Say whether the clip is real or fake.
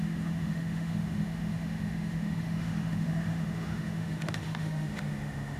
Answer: fake